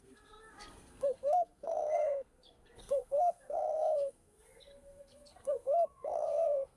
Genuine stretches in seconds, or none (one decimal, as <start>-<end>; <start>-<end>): none